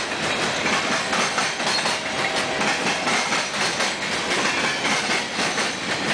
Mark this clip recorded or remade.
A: recorded